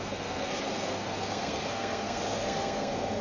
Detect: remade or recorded remade